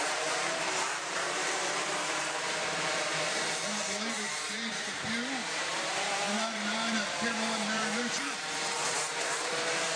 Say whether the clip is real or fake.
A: fake